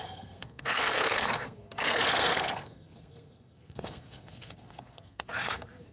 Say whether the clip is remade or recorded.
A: remade